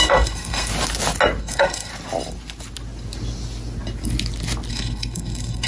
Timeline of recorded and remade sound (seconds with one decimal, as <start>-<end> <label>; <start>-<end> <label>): 0.0-0.7 remade; 0.7-1.4 recorded; 1.4-1.9 remade; 1.9-4.7 recorded; 4.7-5.7 remade